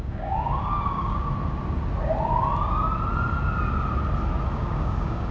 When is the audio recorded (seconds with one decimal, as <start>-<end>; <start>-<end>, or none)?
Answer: 1.3-4.5